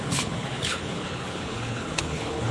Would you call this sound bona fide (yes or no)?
no